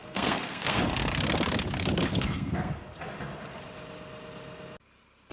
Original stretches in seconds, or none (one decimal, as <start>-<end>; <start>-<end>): 0.8-2.1; 2.7-5.3